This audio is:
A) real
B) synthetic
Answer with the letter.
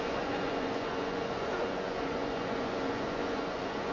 B